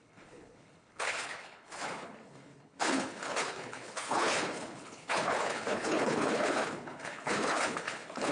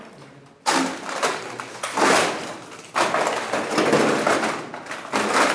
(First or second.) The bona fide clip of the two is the second